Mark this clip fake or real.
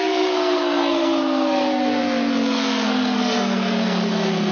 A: fake